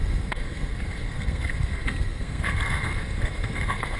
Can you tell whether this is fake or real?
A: fake